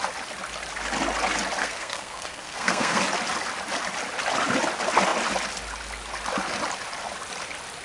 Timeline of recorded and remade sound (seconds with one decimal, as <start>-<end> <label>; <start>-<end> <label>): 0.0-1.6 recorded; 1.6-3.0 remade; 3.0-7.8 recorded